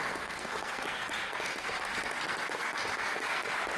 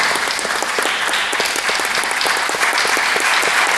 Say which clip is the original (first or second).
second